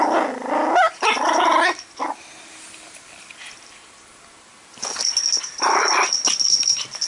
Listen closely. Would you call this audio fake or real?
real